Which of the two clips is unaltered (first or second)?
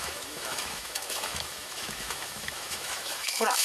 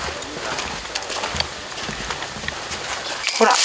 second